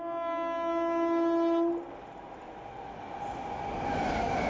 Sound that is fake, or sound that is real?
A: real